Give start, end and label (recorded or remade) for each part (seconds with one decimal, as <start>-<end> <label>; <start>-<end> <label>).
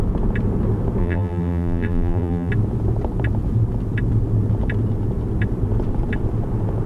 0.0-1.0 recorded; 1.0-2.5 remade; 2.5-6.9 recorded